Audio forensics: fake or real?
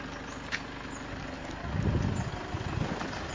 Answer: real